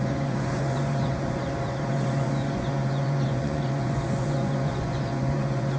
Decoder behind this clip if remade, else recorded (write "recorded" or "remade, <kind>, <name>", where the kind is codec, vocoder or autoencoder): remade, vocoder, Vocos